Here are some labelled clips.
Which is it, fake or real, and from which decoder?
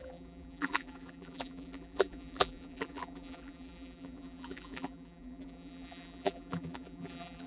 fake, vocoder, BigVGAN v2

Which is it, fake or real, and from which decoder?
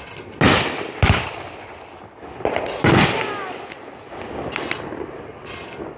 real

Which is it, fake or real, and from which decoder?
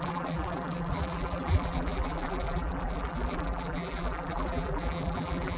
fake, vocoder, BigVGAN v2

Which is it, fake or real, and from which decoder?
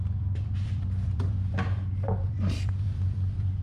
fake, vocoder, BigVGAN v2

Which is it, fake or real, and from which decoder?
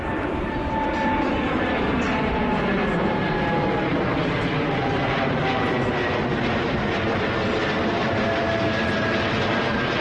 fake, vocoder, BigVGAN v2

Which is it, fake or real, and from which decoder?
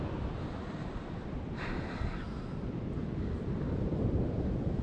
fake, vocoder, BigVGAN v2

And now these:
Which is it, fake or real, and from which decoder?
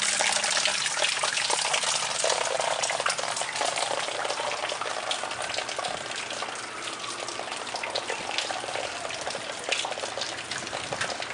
real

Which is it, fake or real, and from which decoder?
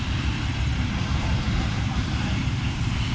fake, vocoder, BigVGAN v2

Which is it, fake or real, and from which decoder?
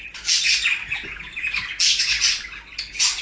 real